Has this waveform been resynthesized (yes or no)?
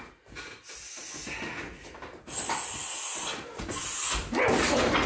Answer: no